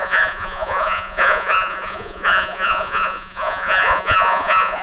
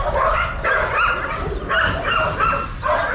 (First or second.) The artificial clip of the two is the first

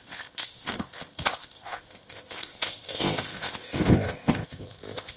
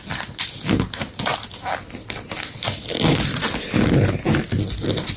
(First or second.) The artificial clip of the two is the first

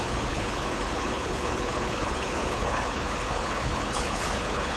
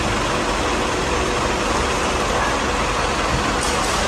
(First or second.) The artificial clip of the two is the first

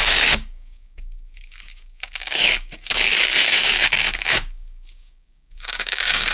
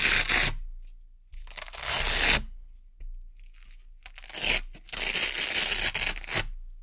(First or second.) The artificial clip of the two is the first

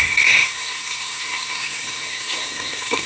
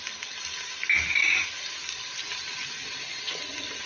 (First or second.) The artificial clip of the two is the first